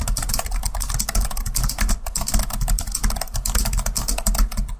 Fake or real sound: real